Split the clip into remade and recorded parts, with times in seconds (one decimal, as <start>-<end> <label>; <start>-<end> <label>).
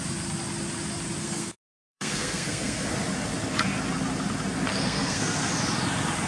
0.0-1.2 recorded; 1.2-2.9 remade; 2.9-4.7 recorded; 4.7-5.5 remade; 5.5-6.3 recorded